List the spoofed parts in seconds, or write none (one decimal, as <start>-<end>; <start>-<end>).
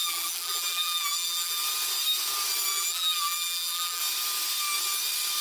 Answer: 0.0-1.6; 2.7-4.0